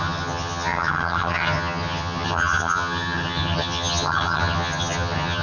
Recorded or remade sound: remade